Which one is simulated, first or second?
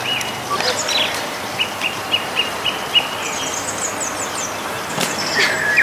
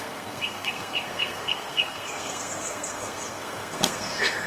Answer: second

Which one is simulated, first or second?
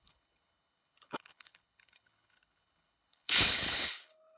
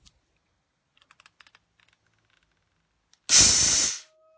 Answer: first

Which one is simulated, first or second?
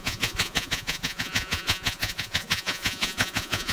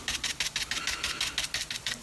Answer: first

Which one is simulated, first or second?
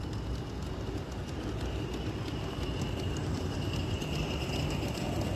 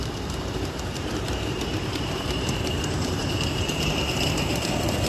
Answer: second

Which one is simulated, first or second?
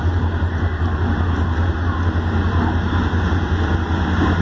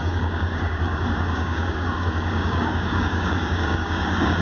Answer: second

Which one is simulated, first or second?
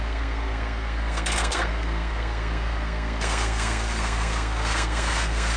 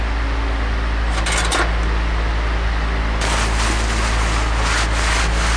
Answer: first